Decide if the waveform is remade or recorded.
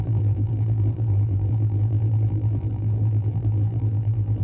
remade